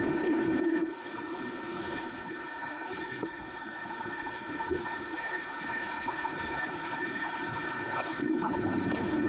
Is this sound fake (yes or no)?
yes